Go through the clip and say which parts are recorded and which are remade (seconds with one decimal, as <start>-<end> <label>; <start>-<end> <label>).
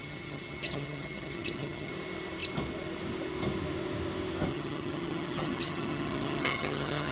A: 0.0-1.9 remade; 1.9-4.5 recorded; 4.5-7.1 remade